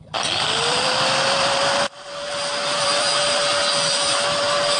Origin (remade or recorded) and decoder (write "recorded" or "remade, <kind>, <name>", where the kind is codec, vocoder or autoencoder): remade, vocoder, BigVGAN v2